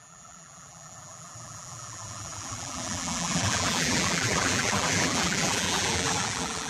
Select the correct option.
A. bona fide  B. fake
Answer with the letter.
B